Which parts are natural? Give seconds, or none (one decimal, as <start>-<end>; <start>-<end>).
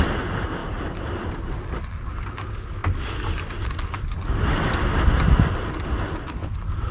0.0-0.6; 2.1-6.9